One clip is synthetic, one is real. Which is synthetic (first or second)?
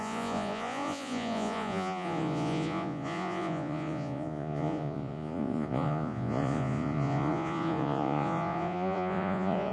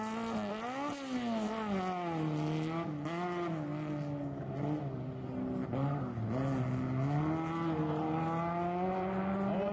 first